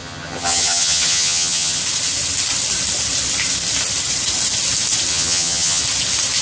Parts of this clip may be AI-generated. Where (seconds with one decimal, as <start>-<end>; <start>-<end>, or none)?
0.0-1.8; 5.1-5.8

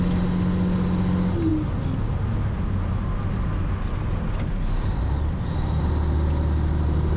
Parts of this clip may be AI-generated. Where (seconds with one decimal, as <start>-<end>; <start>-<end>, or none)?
none

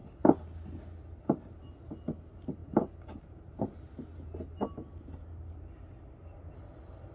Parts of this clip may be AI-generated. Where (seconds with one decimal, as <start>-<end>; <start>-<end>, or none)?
none